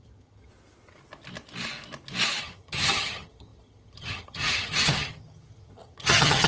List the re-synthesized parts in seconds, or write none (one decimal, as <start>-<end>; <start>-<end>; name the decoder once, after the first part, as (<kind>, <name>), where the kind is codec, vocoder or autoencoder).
0.0-0.5 (vocoder, HiFi-GAN); 2.4-6.5

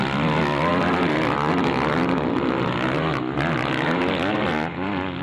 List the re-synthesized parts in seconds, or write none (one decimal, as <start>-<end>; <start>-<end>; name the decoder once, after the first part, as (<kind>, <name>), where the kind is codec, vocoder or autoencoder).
none